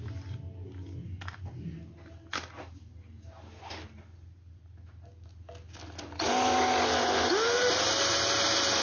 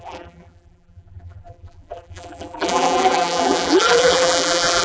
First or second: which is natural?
first